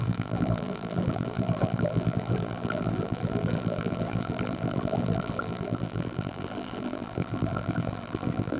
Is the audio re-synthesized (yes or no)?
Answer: yes